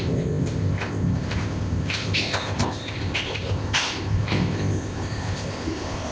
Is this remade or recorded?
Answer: remade